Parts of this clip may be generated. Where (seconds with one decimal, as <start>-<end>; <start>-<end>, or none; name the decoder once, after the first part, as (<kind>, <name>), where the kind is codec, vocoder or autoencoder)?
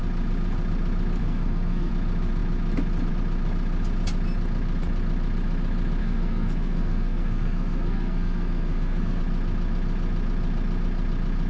1.2-1.9 (codec, SNAC); 6.0-9.2